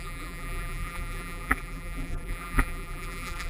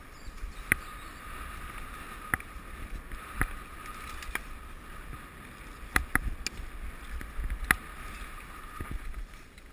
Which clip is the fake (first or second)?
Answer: first